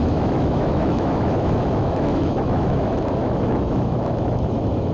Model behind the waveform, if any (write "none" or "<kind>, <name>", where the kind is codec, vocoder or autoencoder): autoencoder, DAC-VAE